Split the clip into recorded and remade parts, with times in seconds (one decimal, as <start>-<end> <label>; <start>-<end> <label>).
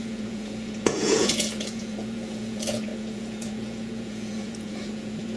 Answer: 0.0-5.4 remade